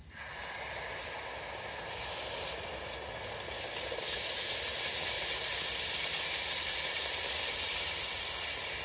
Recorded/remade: recorded